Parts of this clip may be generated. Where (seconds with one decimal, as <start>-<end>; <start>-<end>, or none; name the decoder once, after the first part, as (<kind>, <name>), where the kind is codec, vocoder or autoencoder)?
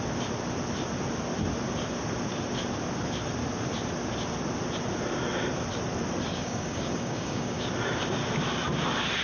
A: 6.3-7.6 (codec, DAC)